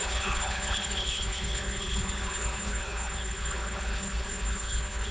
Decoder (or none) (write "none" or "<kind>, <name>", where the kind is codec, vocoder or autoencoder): codec, HILCodec